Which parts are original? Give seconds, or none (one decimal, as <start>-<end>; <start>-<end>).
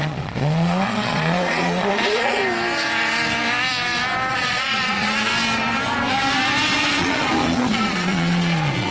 2.4-4.3; 5.3-7.0